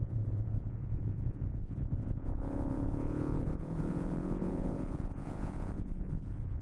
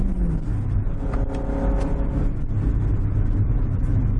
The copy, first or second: first